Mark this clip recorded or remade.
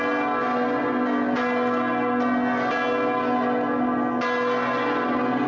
recorded